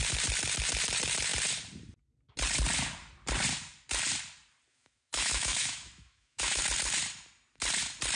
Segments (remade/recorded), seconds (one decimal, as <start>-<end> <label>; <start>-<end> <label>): 0.0-4.7 recorded; 4.7-6.6 remade; 6.6-8.2 recorded